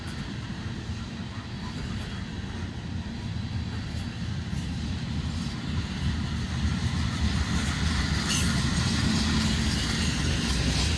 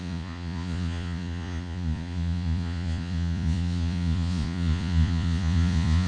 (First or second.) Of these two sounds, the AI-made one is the second